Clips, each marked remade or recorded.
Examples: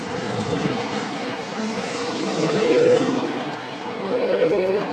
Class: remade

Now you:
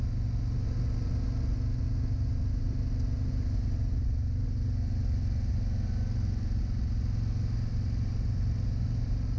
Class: recorded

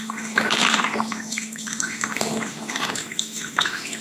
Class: remade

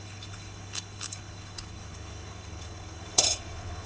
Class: remade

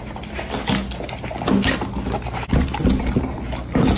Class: recorded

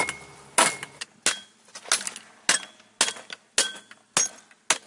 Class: recorded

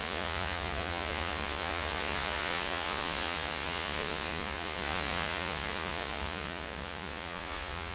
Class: remade